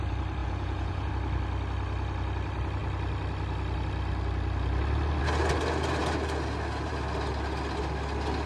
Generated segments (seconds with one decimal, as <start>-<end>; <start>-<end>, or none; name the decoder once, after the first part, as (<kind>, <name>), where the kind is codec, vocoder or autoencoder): 0.4-1.1 (vocoder, Vocos)